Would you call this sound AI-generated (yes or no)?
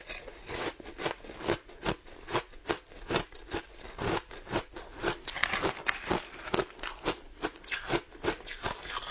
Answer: no